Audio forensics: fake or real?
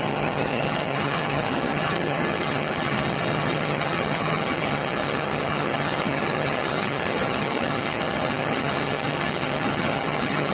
fake